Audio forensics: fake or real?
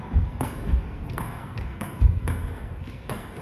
fake